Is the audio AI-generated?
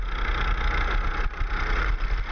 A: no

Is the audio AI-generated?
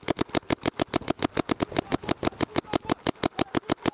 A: no